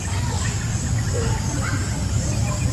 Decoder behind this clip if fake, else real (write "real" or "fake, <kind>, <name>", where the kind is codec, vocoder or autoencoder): real